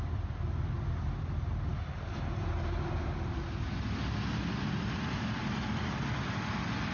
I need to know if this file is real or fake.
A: real